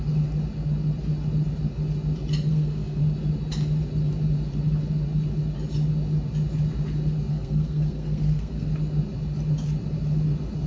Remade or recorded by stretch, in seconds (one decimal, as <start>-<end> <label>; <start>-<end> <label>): 0.0-2.5 recorded; 2.5-3.0 remade; 3.0-7.3 recorded; 7.3-8.7 remade; 8.7-10.7 recorded